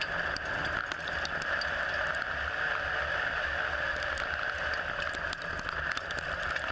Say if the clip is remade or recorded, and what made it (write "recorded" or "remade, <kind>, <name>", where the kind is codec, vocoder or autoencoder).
recorded